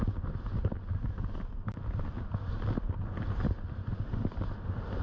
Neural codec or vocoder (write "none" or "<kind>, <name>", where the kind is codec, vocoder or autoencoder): none